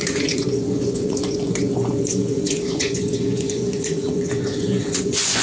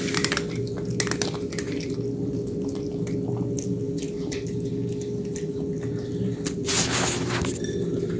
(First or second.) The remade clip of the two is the first